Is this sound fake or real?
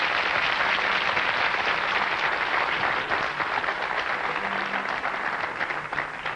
fake